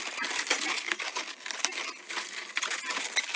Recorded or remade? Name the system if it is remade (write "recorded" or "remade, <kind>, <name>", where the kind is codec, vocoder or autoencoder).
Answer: recorded